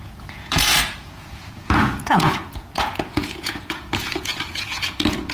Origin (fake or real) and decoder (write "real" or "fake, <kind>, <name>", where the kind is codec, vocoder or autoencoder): fake, vocoder, Vocos